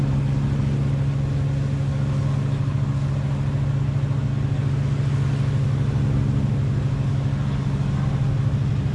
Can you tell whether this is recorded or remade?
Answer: recorded